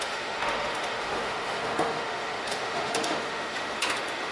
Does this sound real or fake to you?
fake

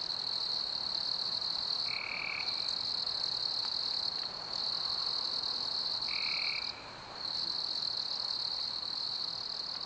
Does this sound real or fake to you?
real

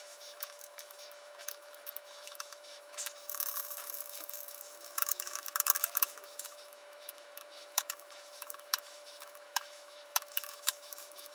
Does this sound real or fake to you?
fake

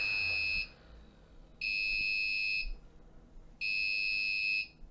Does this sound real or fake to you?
real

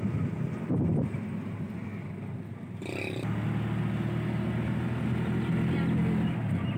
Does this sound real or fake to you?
real